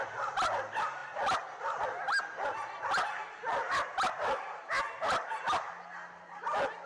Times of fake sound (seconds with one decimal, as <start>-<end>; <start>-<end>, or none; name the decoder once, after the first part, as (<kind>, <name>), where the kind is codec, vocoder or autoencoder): none